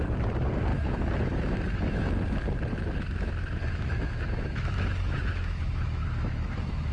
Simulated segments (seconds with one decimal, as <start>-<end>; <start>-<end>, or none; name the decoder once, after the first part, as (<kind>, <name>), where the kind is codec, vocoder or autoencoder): 0.7-2.1 (autoencoder, DAC-VAE); 2.7-6.9